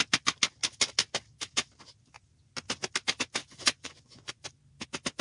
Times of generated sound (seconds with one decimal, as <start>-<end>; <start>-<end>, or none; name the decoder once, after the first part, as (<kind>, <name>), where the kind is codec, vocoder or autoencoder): 3.4-4.5 (vocoder, Vocos)